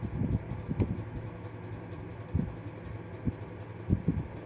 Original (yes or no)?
yes